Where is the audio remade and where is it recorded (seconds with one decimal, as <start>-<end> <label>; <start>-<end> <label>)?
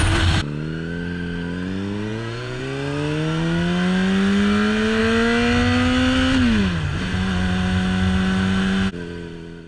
0.0-2.1 recorded; 2.1-2.6 remade; 2.6-9.7 recorded